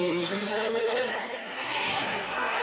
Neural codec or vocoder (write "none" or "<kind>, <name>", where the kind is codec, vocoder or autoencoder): codec, SNAC